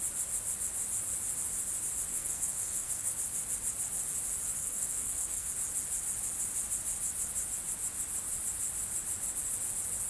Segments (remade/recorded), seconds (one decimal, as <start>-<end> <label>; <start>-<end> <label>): 0.0-2.1 recorded; 2.1-3.1 remade; 3.1-4.6 recorded; 4.6-5.5 remade; 5.5-10.1 recorded